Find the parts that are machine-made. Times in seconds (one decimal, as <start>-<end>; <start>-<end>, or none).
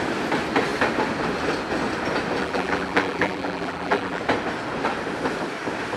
2.4-4.2